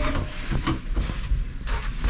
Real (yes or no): no